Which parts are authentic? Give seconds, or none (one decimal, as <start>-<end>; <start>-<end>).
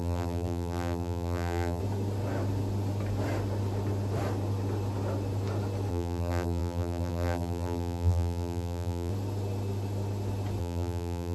1.8-5.9; 9.1-10.6